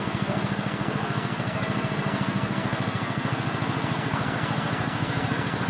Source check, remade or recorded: remade